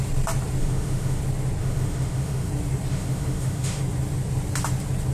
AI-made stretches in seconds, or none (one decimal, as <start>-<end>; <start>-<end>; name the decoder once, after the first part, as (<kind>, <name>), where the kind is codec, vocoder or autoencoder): 0.6-1.2 (autoencoder, DAC-VAE); 1.6-2.5; 2.9-3.8